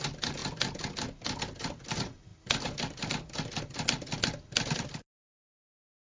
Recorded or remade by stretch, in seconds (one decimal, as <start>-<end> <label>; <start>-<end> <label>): 0.0-6.0 recorded